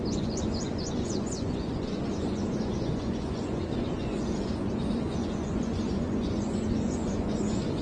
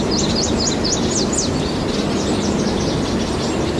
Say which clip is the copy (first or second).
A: first